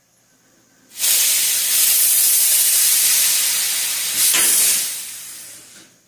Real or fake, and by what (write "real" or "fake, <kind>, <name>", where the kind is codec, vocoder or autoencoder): real